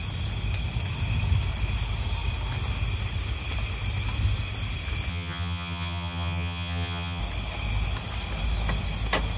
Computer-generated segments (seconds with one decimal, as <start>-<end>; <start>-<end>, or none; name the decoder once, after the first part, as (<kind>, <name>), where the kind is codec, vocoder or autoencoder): 5.1-7.2 (vocoder, HiFi-GAN)